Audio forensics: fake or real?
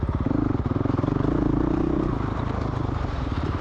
fake